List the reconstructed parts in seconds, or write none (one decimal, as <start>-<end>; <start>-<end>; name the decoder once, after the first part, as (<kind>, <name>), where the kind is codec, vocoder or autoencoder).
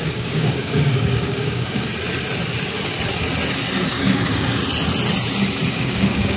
0.0-1.9 (codec, DAC); 3.9-4.6; 5.7-6.4